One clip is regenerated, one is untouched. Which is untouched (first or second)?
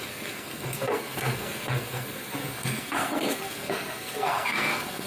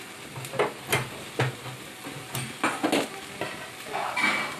second